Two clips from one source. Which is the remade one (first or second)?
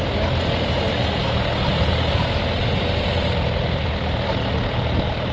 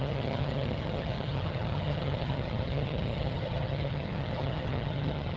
second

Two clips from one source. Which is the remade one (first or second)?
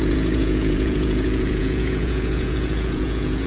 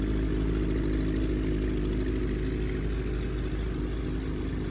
first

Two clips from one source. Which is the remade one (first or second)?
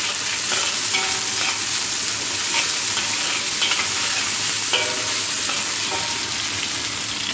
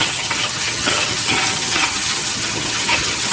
second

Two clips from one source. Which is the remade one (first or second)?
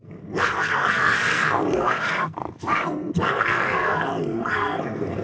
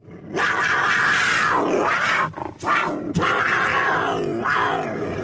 first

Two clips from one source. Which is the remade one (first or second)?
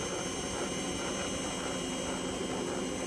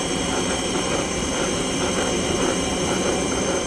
second